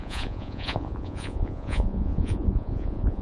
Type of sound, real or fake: fake